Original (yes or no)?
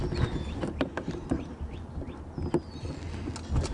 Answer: yes